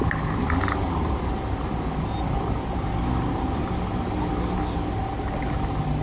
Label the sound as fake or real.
real